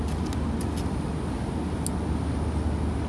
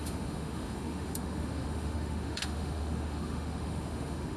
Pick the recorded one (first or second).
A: first